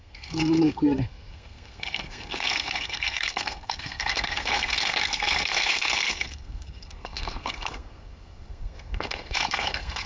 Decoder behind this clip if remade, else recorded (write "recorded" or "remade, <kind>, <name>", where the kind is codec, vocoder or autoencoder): remade, codec, SNAC